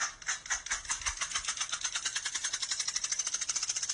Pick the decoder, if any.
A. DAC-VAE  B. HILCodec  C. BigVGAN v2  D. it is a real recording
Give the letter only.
D